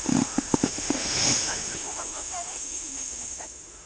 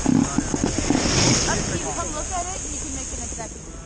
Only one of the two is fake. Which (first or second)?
first